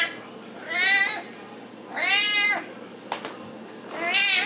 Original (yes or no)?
yes